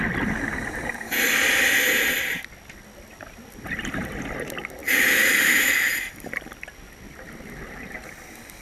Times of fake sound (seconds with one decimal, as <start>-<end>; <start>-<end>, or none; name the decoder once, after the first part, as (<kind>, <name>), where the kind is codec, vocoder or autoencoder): 3.1-4.1 (vocoder, BigVGAN v2); 4.8-7.0